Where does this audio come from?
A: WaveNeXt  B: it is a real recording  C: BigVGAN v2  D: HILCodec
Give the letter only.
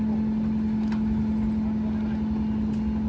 B